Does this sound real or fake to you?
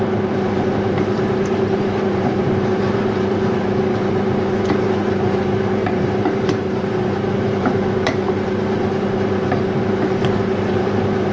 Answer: fake